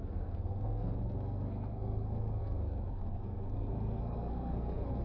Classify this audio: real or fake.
fake